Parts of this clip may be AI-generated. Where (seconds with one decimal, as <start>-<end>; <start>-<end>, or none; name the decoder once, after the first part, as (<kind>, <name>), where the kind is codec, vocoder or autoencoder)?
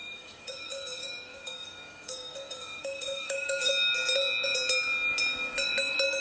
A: 0.0-3.7 (codec, DAC)